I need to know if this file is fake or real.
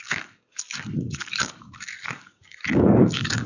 fake